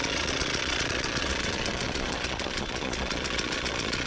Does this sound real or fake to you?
fake